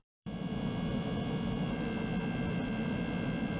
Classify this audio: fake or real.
fake